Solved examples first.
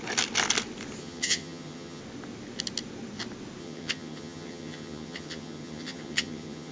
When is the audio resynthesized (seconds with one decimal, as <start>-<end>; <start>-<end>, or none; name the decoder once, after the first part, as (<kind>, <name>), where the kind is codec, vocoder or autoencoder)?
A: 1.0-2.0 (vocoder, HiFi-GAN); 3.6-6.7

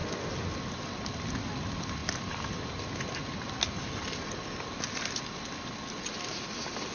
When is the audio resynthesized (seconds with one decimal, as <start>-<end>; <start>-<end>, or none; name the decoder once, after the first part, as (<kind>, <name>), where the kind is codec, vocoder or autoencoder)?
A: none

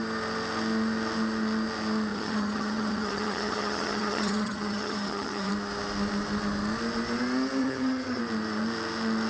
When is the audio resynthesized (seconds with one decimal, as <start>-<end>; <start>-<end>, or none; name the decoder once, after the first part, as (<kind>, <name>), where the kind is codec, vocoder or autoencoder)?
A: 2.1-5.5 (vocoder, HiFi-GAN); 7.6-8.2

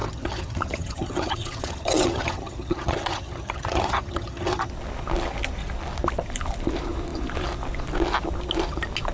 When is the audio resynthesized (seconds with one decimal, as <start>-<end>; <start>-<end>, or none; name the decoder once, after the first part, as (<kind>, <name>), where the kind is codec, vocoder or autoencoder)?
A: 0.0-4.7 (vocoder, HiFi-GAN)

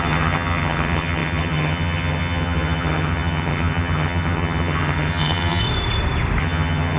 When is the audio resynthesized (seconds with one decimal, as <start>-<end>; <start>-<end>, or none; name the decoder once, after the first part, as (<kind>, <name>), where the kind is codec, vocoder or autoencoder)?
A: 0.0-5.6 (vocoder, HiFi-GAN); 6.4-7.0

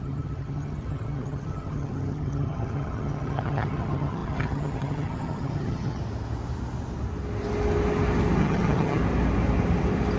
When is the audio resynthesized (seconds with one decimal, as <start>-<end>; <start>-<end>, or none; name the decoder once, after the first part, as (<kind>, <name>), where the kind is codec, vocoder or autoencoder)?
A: 0.0-6.0 (vocoder, HiFi-GAN); 8.4-9.0

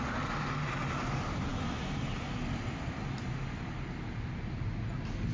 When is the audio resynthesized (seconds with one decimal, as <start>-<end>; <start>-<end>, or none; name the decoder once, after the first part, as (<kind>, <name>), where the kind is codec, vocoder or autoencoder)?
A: none

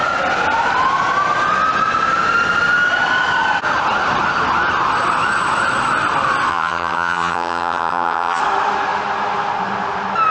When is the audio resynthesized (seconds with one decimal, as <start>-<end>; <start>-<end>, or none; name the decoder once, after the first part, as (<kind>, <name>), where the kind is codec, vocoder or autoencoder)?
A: 6.5-8.4 (vocoder, HiFi-GAN)